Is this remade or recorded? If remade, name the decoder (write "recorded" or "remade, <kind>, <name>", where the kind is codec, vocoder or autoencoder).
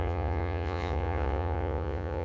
remade, vocoder, Vocos